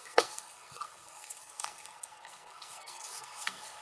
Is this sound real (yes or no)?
no